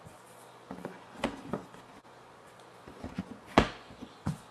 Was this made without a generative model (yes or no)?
no